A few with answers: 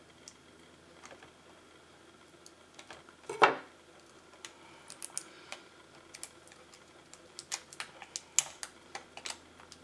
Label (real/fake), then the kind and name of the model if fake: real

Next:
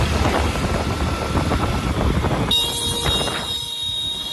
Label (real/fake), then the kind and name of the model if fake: real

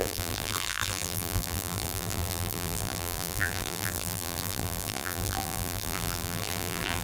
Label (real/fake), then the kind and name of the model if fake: fake, vocoder, BigVGAN v2